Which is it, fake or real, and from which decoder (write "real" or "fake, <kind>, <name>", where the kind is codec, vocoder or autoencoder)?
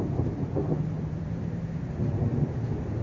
fake, vocoder, BigVGAN v2